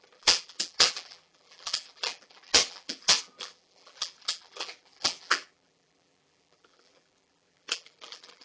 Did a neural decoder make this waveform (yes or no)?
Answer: yes